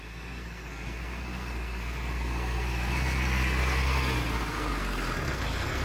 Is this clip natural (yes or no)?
no